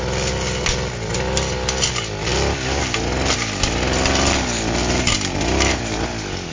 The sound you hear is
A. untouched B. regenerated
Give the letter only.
A